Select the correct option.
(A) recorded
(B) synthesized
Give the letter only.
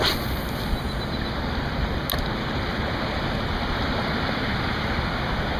A